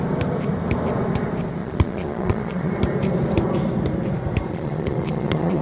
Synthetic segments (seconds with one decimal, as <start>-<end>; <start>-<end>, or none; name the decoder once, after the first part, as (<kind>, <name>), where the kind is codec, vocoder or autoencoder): 1.6-2.7 (vocoder, Vocos); 4.5-5.6